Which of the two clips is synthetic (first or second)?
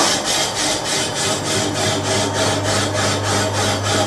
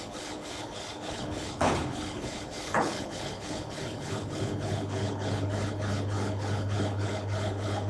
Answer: second